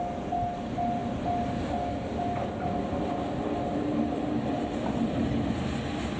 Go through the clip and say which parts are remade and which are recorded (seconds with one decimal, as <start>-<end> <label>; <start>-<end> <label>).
0.0-6.2 recorded